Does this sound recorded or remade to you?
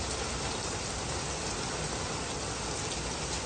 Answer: recorded